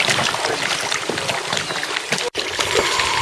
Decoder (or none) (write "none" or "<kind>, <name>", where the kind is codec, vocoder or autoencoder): vocoder, BigVGAN v2